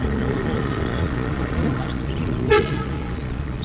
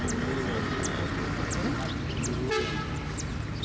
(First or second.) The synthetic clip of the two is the first